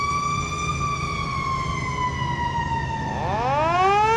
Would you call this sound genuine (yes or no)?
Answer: yes